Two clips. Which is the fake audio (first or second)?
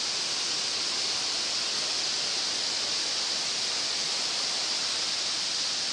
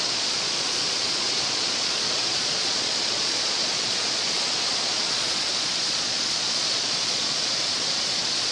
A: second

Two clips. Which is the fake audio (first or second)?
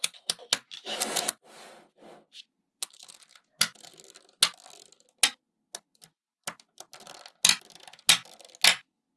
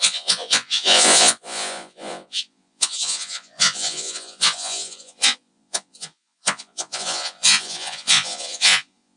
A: second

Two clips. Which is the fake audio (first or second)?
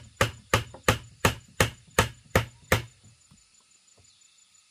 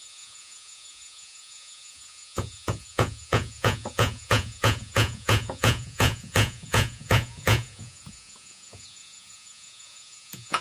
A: second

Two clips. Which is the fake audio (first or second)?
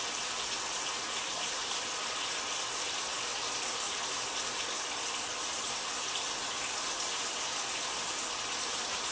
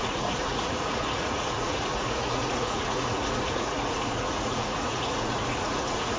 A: second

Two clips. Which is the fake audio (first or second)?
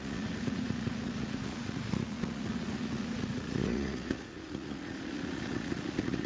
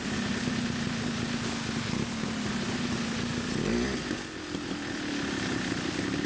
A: first